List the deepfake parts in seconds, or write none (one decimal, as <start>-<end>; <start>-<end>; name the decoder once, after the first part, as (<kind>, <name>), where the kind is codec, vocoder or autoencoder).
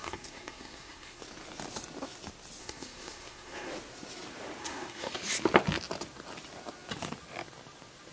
0.0-1.2 (codec, SNAC); 2.6-3.7; 4.6-5.1